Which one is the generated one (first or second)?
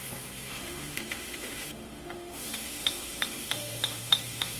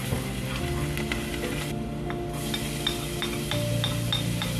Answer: first